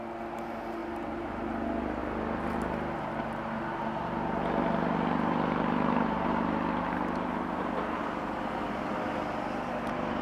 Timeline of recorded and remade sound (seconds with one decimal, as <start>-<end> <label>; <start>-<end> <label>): 0.0-10.2 recorded